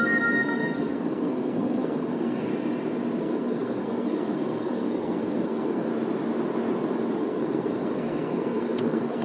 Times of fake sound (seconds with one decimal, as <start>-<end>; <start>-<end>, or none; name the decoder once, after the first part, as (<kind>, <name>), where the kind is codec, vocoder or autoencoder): 0.0-2.5 (codec, SNAC); 3.2-5.9; 7.2-9.2